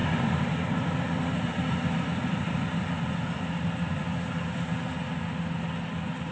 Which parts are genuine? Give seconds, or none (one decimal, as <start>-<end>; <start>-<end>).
0.0-6.3